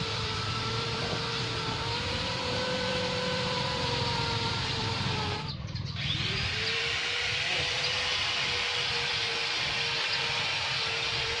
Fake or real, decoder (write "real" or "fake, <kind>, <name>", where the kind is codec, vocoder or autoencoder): fake, vocoder, BigVGAN v2